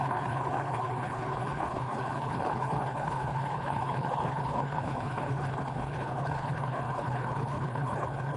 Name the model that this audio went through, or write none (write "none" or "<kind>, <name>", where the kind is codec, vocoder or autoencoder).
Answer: codec, HILCodec